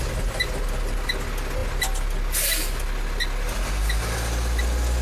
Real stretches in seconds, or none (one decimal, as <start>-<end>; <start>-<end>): 0.0-5.0